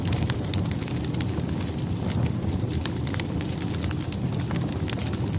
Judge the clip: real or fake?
real